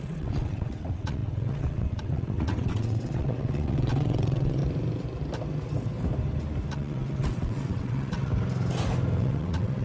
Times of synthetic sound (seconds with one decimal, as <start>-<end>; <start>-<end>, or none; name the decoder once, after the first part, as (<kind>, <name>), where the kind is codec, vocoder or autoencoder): 0.0-4.6 (vocoder, WaveNeXt); 6.7-8.3; 9.2-9.8